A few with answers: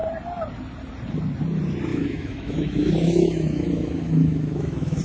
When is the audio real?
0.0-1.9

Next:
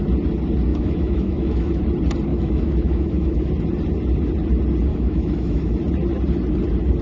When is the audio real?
0.0-0.7; 1.8-2.3; 3.5-4.9; 5.8-7.0